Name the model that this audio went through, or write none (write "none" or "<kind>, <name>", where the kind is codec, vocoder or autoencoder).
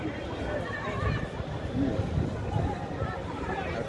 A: none